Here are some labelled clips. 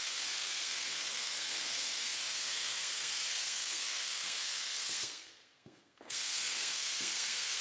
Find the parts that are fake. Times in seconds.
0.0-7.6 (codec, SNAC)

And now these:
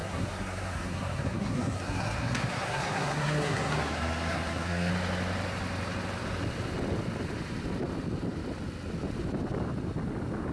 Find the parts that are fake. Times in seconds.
0.0-4.9 (codec, SNAC)

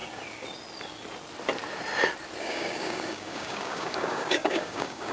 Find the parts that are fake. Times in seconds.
2.4-5.1 (codec, DAC)

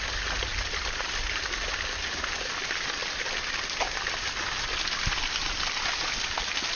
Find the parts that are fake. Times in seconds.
none

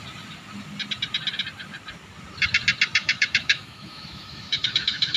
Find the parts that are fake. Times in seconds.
3.0-5.2 (autoencoder, DAC-VAE)

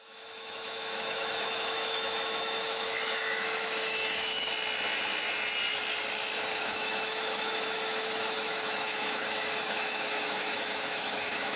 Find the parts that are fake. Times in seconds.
0.0-4.5 (autoencoder, DAC-VAE); 6.6-11.6